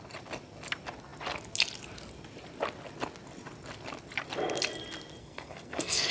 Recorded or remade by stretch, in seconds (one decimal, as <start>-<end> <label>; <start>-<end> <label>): 0.0-5.2 recorded; 5.2-6.1 remade